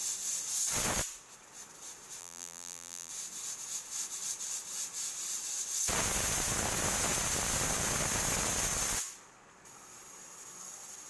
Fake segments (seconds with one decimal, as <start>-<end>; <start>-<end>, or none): 2.2-3.1